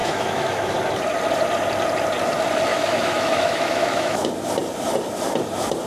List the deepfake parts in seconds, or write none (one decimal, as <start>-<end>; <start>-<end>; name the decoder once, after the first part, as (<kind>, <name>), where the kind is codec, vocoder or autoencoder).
0.0-0.7 (autoencoder, DAC-VAE); 2.7-4.3